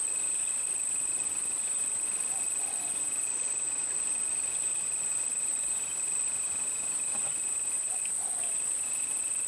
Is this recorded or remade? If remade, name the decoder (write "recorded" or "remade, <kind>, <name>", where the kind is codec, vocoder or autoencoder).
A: recorded